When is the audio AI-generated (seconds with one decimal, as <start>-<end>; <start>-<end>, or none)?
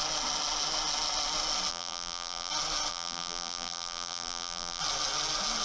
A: 1.7-2.5; 2.9-4.8